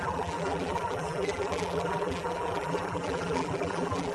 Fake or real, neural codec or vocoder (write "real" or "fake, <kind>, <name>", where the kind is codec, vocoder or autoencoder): fake, vocoder, BigVGAN v2